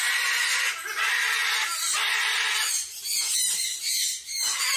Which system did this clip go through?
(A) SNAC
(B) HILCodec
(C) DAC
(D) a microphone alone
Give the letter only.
D